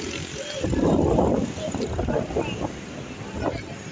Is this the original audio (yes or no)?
yes